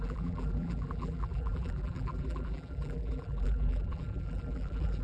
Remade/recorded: remade